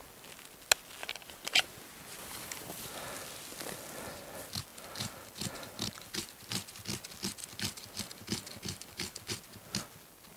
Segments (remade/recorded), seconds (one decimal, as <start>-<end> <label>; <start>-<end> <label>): 0.0-1.0 recorded; 1.0-1.8 remade; 1.8-2.2 recorded; 2.2-2.9 remade; 2.9-4.7 recorded; 4.7-6.3 remade; 6.3-7.4 recorded; 7.4-9.2 remade; 9.2-10.4 recorded